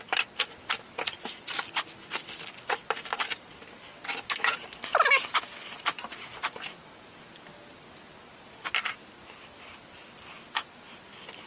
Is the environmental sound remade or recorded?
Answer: recorded